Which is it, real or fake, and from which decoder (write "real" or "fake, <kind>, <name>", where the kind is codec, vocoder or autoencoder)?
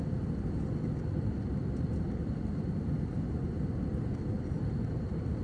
real